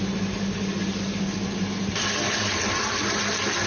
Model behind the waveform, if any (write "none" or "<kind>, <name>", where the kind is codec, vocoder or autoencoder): vocoder, BigVGAN v2